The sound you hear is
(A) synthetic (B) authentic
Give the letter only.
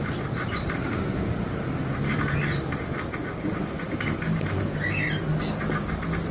B